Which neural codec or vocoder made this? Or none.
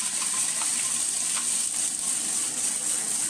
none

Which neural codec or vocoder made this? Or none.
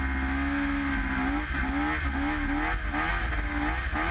none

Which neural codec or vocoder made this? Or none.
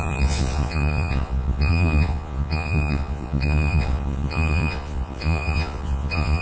vocoder, Vocos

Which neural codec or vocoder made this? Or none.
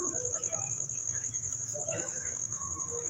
autoencoder, DAC-VAE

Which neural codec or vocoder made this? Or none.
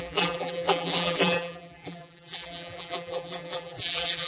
vocoder, BigVGAN v2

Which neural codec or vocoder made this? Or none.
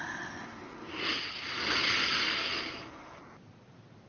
none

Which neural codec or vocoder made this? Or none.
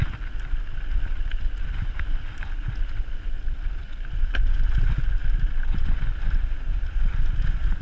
none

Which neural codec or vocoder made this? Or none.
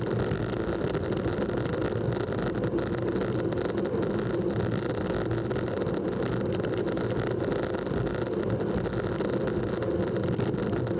none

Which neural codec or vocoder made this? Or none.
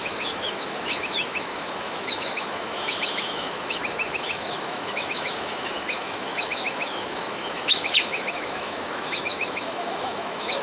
autoencoder, DAC-VAE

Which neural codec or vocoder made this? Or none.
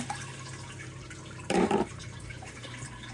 none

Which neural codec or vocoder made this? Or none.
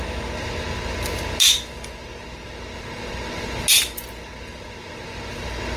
none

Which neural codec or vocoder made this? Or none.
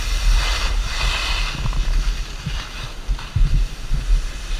none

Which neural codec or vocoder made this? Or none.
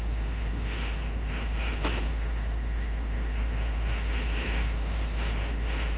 autoencoder, DAC-VAE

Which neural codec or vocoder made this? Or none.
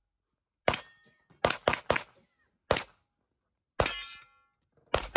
none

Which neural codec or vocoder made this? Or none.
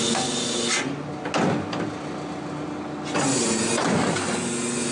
none